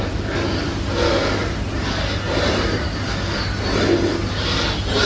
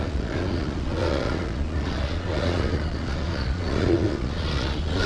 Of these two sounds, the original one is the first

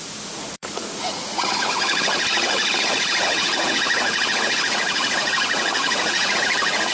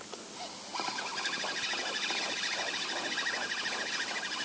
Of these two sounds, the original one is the second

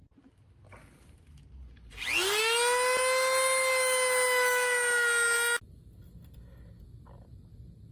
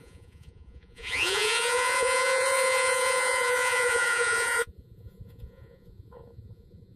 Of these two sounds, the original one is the first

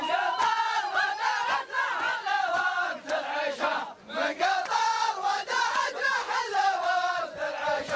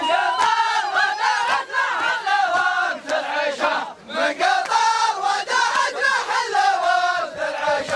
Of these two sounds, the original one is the second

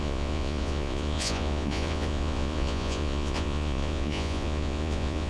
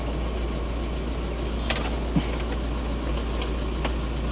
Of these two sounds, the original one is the second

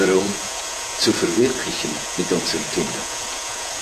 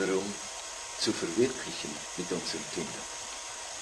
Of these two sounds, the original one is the second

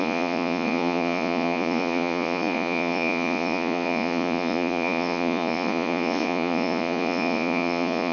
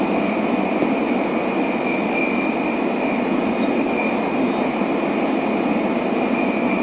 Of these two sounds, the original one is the second